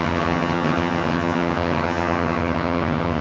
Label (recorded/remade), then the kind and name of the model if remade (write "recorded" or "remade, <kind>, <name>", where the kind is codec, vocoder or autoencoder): remade, vocoder, HiFi-GAN